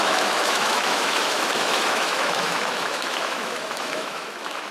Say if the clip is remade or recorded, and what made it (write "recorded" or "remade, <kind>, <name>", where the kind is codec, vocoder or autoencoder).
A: remade, autoencoder, DAC-VAE